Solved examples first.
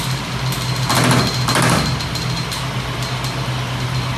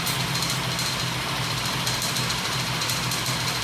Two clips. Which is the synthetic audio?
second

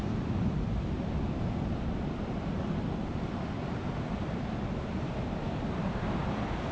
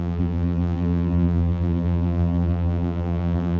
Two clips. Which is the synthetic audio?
second